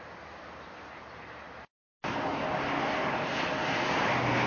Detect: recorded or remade recorded